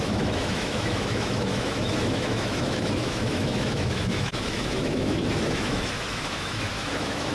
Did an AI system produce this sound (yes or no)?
yes